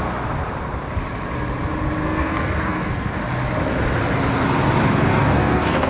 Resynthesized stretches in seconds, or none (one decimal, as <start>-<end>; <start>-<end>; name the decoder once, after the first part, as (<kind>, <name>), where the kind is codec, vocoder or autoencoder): 2.0-3.2 (codec, SNAC); 5.1-5.9